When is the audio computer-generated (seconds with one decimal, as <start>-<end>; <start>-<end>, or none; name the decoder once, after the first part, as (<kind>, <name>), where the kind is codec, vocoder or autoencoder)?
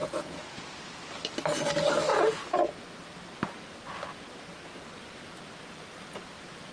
0.0-0.6 (vocoder, Vocos); 2.1-2.8